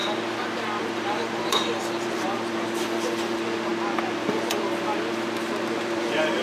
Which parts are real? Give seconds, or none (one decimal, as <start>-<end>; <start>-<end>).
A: 0.0-0.8; 3.7-5.8